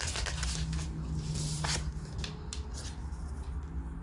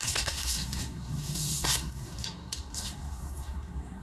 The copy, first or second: second